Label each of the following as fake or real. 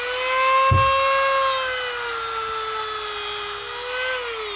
real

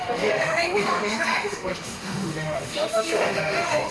fake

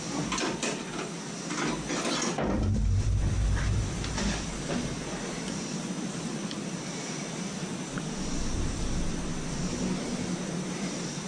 real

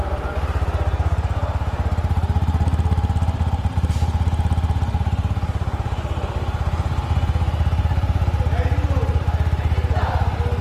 real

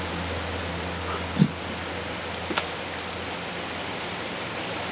real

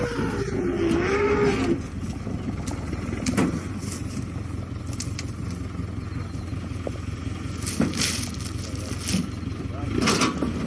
real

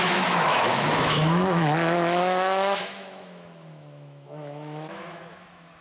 fake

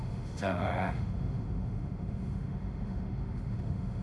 fake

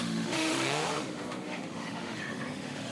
fake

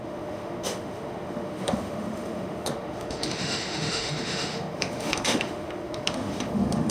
fake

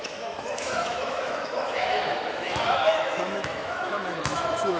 fake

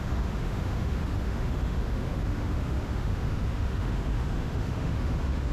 fake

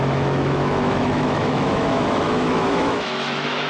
fake